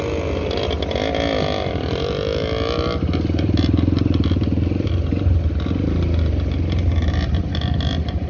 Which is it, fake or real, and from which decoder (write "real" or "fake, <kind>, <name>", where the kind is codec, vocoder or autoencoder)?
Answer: real